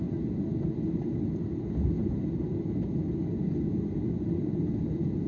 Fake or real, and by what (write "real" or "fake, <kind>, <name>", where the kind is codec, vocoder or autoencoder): real